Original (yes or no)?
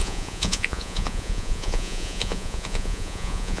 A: no